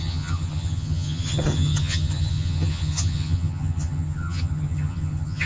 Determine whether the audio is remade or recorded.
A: remade